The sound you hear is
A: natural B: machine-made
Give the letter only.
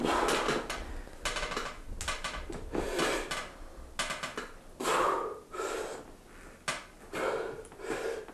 A